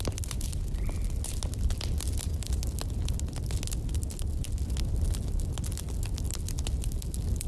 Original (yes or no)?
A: yes